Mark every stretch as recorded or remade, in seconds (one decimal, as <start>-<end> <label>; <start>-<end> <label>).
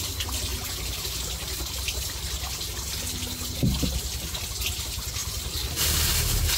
0.0-6.6 recorded